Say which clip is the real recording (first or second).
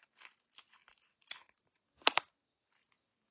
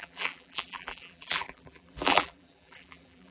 first